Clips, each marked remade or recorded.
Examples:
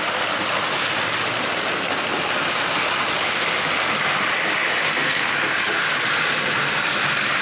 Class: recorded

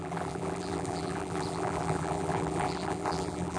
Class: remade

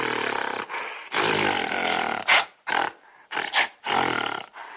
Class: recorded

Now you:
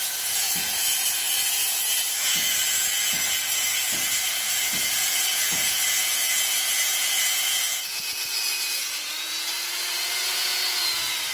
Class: remade